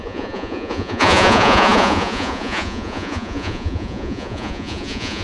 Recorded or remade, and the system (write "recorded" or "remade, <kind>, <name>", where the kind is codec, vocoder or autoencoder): remade, vocoder, Vocos